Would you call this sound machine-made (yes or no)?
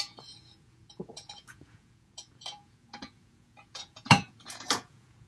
yes